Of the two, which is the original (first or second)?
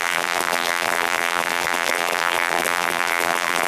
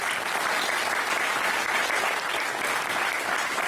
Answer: second